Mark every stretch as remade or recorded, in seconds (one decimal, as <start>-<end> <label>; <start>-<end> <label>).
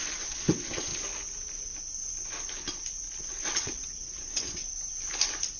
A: 0.0-0.9 remade; 0.9-3.2 recorded; 3.2-4.6 remade; 4.6-5.6 recorded